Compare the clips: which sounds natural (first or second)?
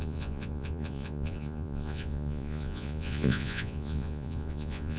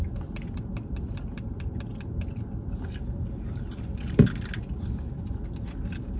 second